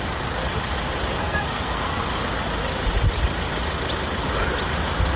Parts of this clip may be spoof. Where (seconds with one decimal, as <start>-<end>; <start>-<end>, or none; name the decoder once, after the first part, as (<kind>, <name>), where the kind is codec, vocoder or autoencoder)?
1.2-2.0 (codec, SNAC)